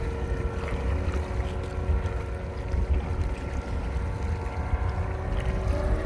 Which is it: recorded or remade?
recorded